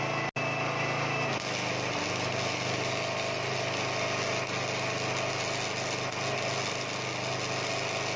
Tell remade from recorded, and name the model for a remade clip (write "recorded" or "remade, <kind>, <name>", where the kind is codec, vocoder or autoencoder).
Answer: recorded